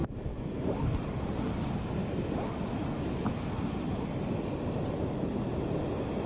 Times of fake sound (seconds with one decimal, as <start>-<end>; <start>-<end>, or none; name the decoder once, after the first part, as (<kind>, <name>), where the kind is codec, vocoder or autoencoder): 0.0-0.6 (vocoder, BigVGAN v2); 2.0-3.4